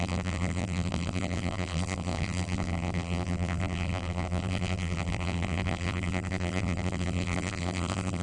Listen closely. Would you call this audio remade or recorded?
remade